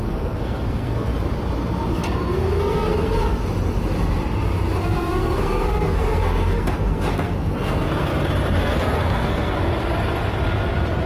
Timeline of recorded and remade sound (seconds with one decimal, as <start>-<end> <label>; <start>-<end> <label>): 0.0-1.1 remade; 1.1-1.9 recorded; 1.9-3.2 remade; 3.2-4.8 recorded; 4.8-8.1 remade; 8.1-8.6 recorded; 8.6-9.7 remade; 9.7-11.1 recorded